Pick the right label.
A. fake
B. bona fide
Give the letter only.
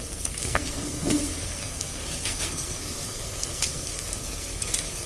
A